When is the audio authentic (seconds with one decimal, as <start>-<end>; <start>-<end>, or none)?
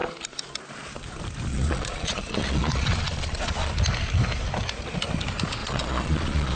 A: 0.0-1.5; 3.7-5.6